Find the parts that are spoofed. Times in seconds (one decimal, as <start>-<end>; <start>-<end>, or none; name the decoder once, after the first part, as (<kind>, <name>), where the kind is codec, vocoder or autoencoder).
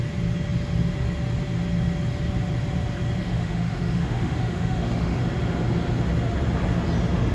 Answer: 3.2-5.2 (autoencoder, DAC-VAE)